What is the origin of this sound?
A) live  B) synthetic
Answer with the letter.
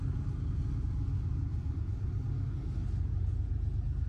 A